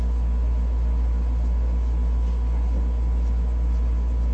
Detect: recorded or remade recorded